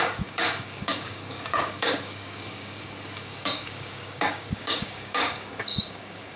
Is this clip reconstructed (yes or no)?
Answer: yes